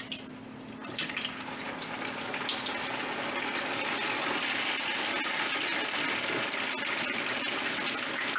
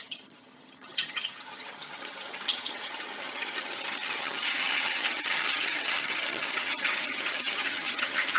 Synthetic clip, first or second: second